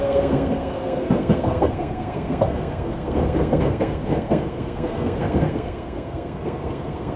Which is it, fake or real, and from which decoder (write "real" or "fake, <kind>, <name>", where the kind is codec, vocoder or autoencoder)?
fake, codec, SNAC